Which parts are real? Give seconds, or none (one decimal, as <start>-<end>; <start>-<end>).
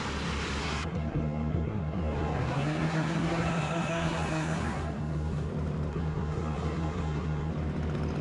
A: 0.0-0.6; 5.5-5.9; 7.5-8.2